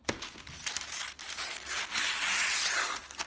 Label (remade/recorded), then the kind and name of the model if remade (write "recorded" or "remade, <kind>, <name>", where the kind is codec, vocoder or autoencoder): recorded